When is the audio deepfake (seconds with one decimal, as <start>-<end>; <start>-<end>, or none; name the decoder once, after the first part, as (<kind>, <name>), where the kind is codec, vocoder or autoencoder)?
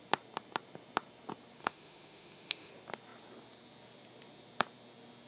1.6-2.7 (autoencoder, DAC-VAE)